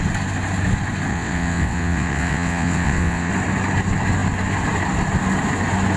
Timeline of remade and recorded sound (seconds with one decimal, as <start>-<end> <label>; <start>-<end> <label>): 0.0-1.1 recorded; 1.1-3.3 remade; 3.3-6.0 recorded